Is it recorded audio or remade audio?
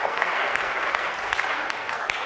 remade